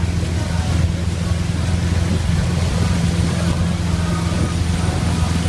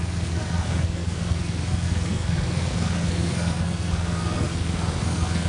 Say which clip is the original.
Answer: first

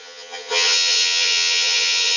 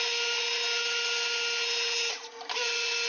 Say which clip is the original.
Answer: second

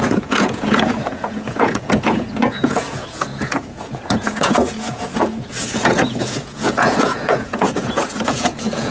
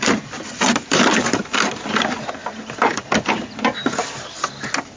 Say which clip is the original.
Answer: second